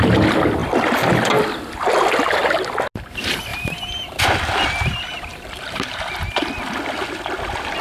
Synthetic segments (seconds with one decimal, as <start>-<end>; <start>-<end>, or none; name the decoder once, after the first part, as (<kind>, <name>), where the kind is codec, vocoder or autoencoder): 3.5-4.2 (vocoder, BigVGAN v2); 5.3-6.5